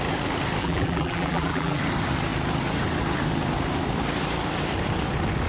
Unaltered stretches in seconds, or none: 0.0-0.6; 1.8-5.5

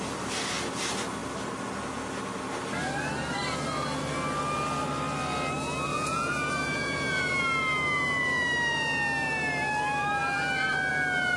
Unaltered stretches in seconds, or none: 0.0-5.9; 7.4-11.4

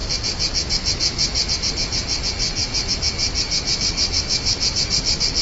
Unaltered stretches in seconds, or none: 0.0-5.4

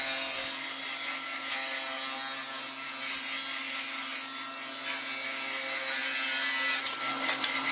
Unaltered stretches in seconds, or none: 0.0-7.7

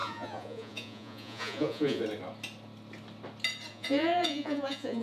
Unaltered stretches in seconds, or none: 2.0-3.7

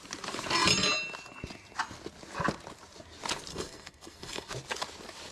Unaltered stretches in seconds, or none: 0.0-3.5; 4.5-5.3

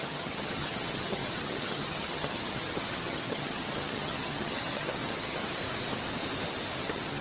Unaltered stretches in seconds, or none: 5.4-6.8

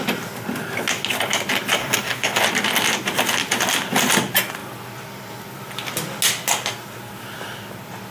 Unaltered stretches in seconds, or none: 0.0-1.8; 2.4-8.1